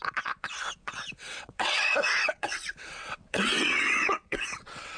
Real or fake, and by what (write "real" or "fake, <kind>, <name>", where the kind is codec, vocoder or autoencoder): fake, vocoder, WaveNeXt